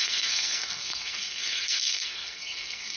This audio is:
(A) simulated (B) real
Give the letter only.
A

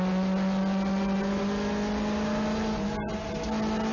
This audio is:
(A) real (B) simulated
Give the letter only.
A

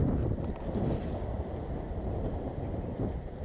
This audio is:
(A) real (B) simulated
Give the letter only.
A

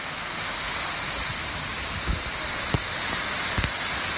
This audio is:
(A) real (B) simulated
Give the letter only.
A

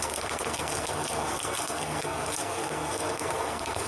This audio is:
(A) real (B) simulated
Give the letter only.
B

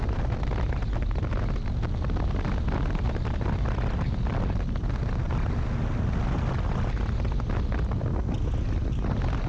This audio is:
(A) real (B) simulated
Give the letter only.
A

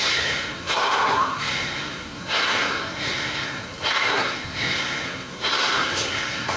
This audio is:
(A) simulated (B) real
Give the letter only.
A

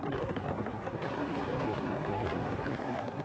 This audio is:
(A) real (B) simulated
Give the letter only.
B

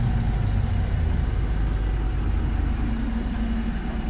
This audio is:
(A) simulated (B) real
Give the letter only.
B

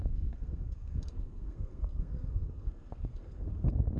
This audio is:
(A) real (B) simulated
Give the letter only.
B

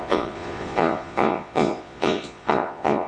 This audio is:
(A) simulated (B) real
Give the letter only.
A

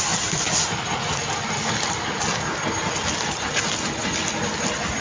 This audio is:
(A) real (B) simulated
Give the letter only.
A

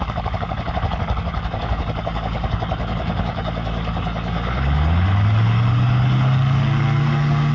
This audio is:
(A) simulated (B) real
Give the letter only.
A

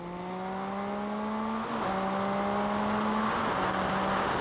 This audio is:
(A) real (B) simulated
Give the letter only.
A